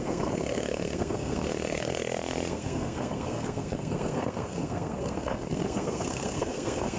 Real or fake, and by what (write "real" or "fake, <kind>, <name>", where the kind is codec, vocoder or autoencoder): fake, codec, SNAC